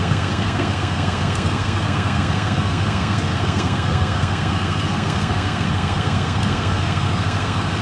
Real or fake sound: fake